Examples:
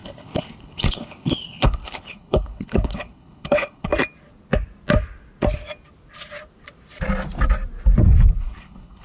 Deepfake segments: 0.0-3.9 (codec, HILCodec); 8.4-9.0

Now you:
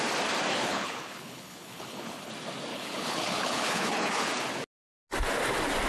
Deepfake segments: 0.5-2.3 (codec, HILCodec); 2.7-4.3